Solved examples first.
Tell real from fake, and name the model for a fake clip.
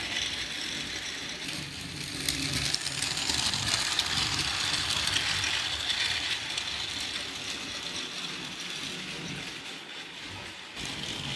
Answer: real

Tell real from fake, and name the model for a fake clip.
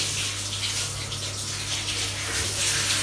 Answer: real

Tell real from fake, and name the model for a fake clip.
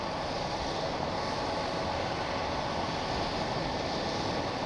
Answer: real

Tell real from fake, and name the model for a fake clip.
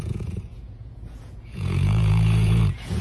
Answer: fake, vocoder, Vocos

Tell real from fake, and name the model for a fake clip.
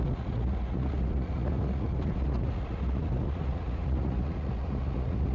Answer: fake, vocoder, Vocos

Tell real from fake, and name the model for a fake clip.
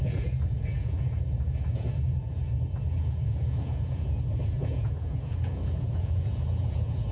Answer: fake, vocoder, Vocos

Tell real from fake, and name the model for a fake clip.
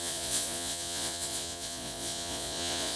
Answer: fake, vocoder, Vocos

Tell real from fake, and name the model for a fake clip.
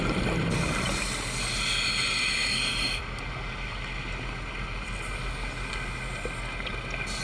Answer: real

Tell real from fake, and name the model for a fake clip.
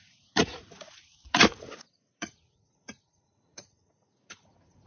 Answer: fake, vocoder, Vocos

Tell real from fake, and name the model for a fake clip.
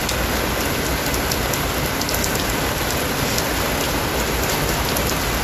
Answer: real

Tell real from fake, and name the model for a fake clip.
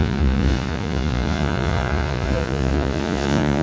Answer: fake, vocoder, Vocos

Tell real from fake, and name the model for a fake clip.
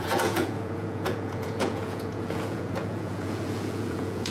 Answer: fake, vocoder, Vocos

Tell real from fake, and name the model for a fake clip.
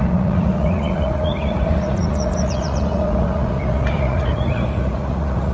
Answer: fake, vocoder, Vocos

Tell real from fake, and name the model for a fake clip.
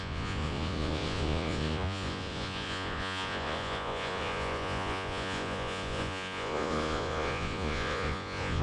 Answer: fake, vocoder, Vocos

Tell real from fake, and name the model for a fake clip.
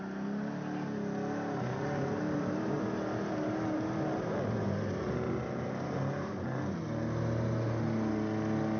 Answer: real